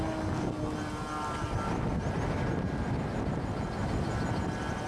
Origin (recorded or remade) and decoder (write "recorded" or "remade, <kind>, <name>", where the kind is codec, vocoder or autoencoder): recorded